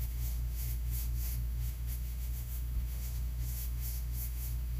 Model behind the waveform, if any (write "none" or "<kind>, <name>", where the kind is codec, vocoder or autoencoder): autoencoder, DAC-VAE